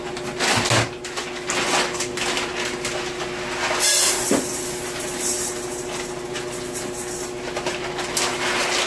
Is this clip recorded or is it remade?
recorded